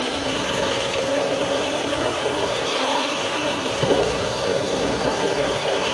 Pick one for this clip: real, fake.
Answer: fake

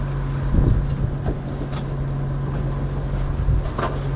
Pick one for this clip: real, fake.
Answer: real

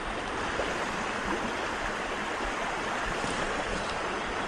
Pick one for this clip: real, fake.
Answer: real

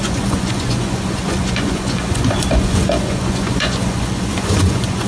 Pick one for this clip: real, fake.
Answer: fake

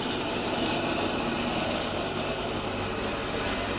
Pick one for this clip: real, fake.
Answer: real